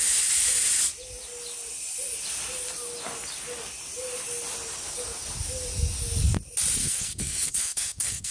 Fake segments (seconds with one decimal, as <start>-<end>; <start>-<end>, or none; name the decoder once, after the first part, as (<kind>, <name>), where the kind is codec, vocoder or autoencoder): 6.8-8.3 (codec, SNAC)